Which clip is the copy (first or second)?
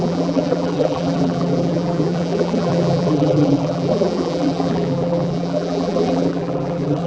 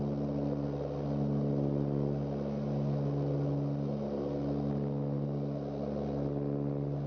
first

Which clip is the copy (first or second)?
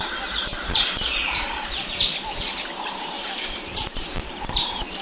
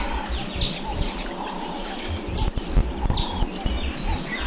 first